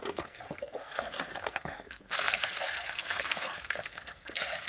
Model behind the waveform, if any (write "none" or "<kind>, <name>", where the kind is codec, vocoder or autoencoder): codec, SNAC